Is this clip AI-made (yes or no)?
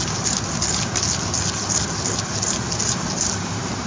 no